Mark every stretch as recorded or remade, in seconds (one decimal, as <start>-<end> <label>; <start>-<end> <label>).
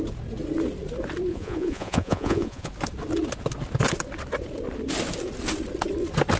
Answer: 0.0-1.3 recorded; 1.3-2.7 remade; 2.7-6.4 recorded